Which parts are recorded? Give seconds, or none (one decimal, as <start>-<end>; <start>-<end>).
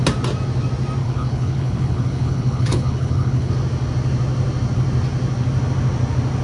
0.0-1.0; 3.5-6.4